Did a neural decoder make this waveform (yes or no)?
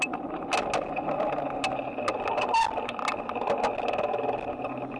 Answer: no